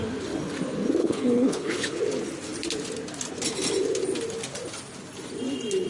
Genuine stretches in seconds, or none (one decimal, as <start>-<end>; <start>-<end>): 0.0-1.0; 2.0-5.9